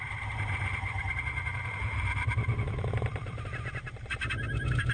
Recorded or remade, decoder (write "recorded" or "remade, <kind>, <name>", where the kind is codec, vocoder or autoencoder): remade, vocoder, BigVGAN v2